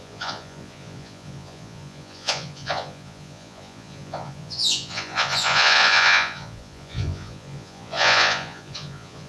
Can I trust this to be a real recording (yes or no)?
no